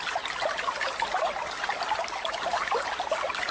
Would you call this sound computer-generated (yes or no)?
no